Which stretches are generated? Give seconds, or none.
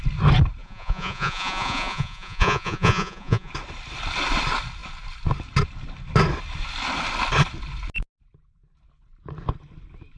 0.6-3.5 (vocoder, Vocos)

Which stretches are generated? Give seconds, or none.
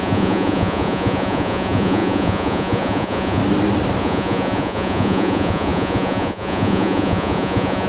0.0-3.4 (vocoder, Vocos); 4.0-7.9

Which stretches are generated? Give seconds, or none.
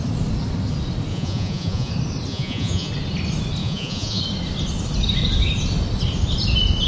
1.1-1.9 (vocoder, Vocos); 2.3-2.9; 3.6-4.2